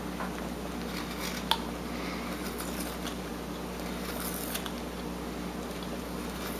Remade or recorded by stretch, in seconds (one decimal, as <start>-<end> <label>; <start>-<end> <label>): 0.0-6.6 recorded